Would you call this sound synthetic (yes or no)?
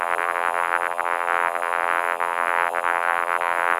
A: yes